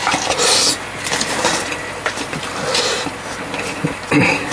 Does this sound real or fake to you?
real